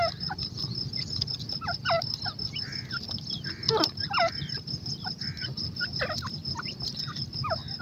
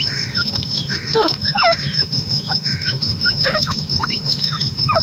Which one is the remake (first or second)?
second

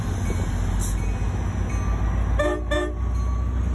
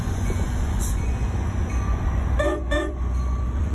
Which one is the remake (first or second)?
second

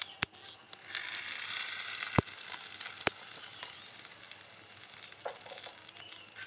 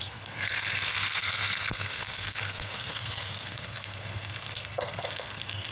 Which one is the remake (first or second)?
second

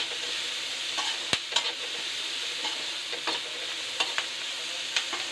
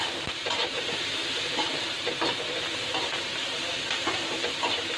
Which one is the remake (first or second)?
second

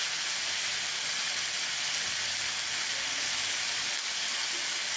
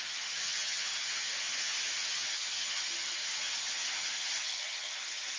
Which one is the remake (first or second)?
second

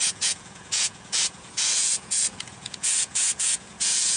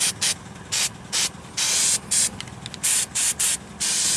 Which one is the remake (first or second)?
first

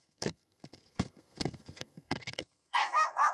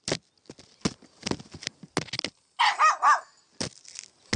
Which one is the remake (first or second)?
first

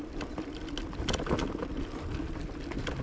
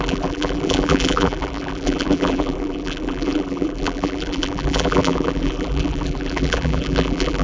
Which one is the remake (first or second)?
second